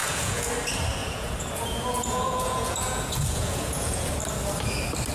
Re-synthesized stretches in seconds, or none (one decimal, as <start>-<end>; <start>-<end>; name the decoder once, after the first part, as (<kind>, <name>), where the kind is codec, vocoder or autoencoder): 0.0-0.5 (vocoder, Vocos); 1.0-4.1